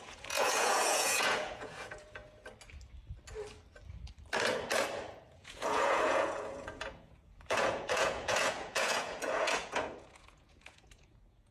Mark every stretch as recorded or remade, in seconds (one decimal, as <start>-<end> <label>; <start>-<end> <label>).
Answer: 0.0-2.2 remade; 2.2-5.1 recorded; 5.1-11.5 remade